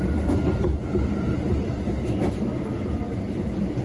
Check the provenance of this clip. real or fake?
real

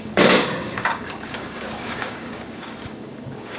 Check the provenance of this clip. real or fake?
fake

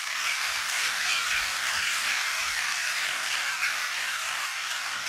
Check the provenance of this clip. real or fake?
fake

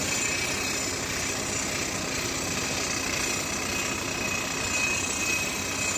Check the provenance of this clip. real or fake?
real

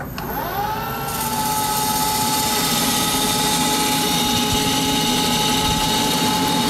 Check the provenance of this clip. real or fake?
real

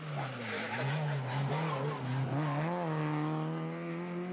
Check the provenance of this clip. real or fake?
real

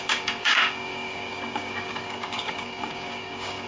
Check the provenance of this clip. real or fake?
fake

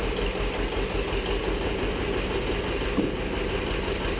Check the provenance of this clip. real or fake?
real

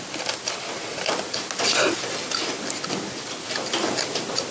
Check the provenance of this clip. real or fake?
real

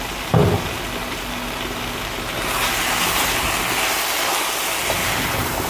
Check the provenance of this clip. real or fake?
real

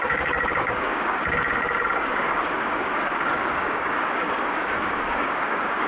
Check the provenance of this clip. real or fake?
fake